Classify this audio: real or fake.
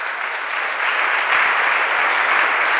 real